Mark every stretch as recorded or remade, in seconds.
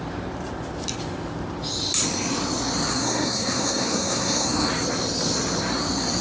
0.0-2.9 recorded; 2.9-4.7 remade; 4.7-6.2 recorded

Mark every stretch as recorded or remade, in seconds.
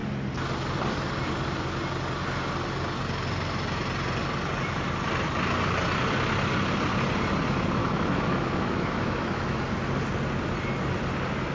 0.0-7.8 recorded; 7.8-9.6 remade; 9.6-11.5 recorded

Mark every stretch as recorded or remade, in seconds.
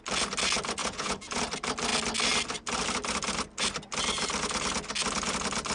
0.0-0.8 recorded; 0.8-1.4 remade; 1.4-5.7 recorded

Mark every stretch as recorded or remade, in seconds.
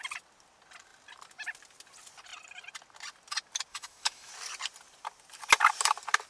0.0-3.7 recorded; 3.7-4.3 remade; 4.3-6.3 recorded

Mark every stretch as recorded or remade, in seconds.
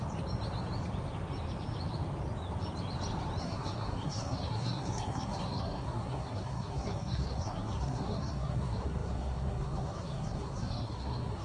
0.0-3.4 recorded; 3.4-11.4 remade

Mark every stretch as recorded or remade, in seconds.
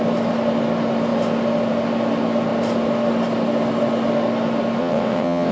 0.0-4.8 recorded; 4.8-5.5 remade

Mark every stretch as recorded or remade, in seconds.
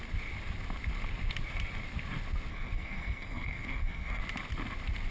0.0-2.5 recorded; 2.5-4.2 remade; 4.2-5.1 recorded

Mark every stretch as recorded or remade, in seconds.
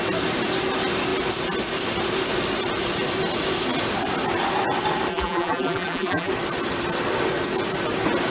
0.0-5.1 recorded; 5.1-6.3 remade; 6.3-8.3 recorded